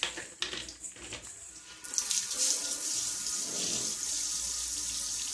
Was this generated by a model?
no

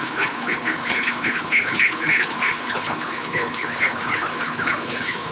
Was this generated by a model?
yes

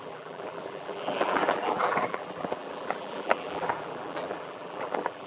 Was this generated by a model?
yes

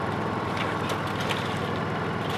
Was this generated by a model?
no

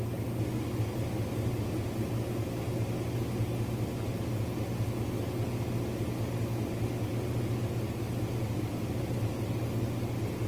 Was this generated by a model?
no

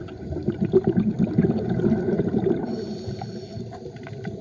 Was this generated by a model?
no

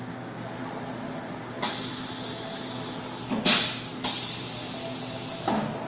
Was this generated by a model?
no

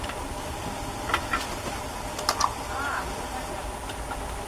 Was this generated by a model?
no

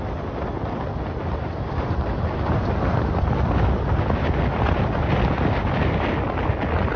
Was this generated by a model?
no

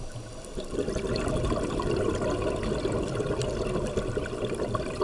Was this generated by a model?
no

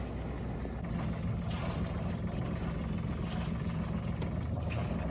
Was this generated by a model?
no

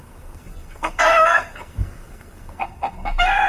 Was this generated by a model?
yes